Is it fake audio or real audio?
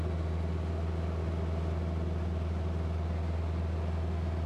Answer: real